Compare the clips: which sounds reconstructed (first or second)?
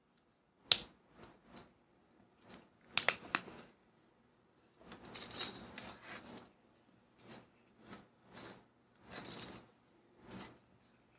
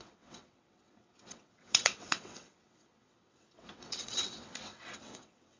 second